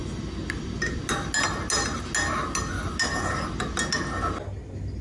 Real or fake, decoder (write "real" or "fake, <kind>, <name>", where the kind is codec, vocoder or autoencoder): real